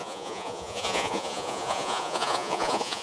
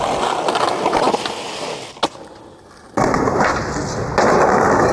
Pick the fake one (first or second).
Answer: first